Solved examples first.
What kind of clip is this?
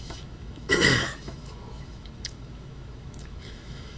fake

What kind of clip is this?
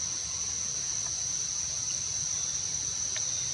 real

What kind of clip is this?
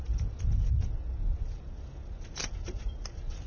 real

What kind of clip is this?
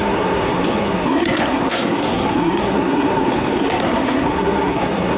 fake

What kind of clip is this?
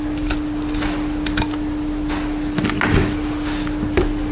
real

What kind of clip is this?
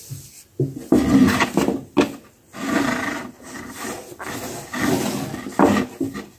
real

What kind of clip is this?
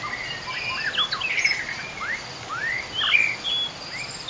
real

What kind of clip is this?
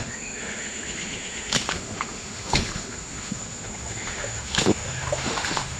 fake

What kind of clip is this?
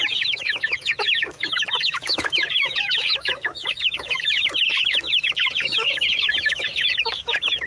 fake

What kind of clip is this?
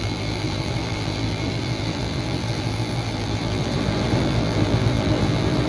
fake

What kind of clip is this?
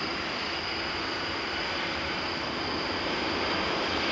real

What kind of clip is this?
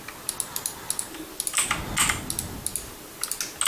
real